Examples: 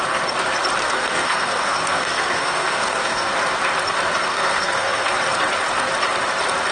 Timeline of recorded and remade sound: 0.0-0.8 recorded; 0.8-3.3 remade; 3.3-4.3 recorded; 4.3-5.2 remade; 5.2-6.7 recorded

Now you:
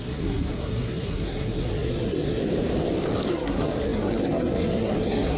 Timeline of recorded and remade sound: 0.0-2.4 remade; 2.4-3.3 recorded; 3.3-5.4 remade

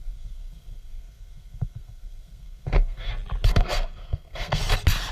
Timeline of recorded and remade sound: 0.0-3.1 remade; 3.1-3.5 recorded; 3.5-4.6 remade; 4.6-5.1 recorded

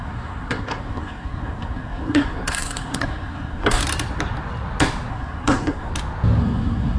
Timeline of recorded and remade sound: 0.0-3.8 remade; 3.8-5.1 recorded; 5.1-5.9 remade; 5.9-6.4 recorded; 6.4-7.0 remade